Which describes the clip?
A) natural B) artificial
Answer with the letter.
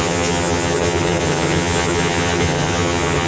B